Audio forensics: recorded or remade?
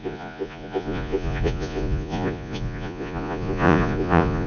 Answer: remade